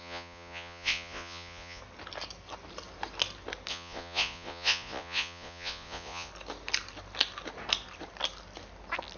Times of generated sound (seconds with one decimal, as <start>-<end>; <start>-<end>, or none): 0.0-1.8; 3.7-6.3